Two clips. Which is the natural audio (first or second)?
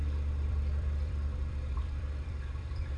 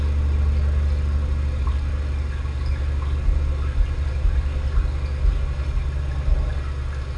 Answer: second